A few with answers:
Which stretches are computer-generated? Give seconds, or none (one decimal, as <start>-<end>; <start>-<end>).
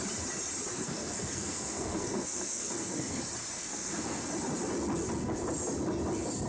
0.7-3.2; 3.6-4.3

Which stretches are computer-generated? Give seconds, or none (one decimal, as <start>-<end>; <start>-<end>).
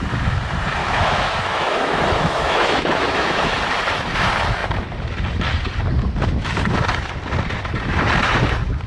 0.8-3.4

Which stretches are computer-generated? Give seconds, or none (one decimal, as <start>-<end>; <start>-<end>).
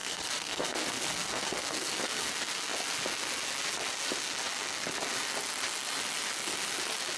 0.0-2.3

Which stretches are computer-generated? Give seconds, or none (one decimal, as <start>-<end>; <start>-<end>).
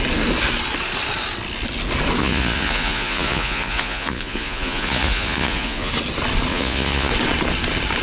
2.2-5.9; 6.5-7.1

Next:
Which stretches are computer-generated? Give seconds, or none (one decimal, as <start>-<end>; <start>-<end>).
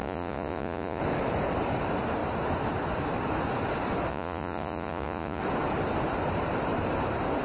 0.0-1.0; 4.1-5.4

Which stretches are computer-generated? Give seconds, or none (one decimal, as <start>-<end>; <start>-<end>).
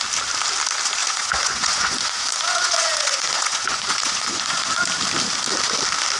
1.0-4.7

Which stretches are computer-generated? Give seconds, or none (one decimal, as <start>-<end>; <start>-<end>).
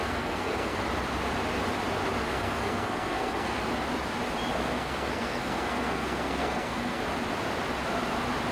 0.0-0.8; 2.3-3.6; 4.5-7.0